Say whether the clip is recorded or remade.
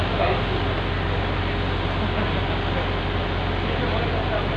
recorded